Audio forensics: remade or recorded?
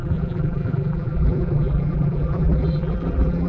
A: remade